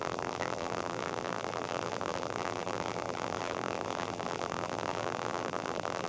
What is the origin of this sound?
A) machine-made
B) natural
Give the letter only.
A